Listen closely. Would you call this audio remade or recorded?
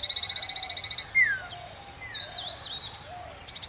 recorded